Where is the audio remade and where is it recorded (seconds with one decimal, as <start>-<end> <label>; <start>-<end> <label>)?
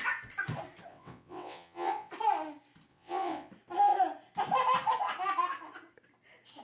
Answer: 0.0-0.9 recorded; 0.9-2.1 remade; 2.1-2.9 recorded; 2.9-3.5 remade; 3.5-6.6 recorded